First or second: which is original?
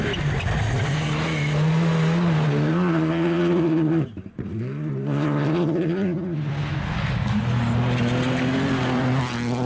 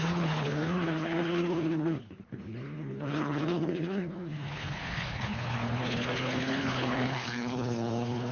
first